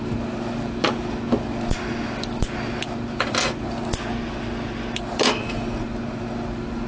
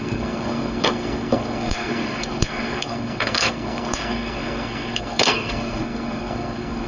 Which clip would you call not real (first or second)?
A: second